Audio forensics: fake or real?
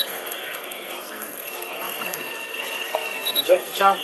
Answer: fake